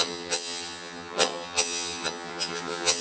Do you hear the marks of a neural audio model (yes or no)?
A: yes